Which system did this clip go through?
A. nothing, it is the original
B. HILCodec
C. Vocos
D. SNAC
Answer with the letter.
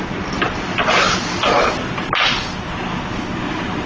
A